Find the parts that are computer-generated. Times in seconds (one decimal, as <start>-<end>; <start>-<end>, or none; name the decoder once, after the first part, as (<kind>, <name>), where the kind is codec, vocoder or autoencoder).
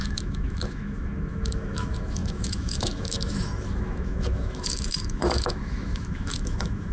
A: 0.0-6.9 (autoencoder, DAC-VAE)